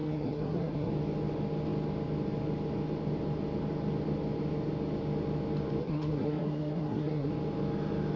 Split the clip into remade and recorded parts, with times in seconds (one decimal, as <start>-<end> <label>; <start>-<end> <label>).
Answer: 0.0-0.9 remade; 0.9-5.8 recorded; 5.8-7.3 remade; 7.3-8.2 recorded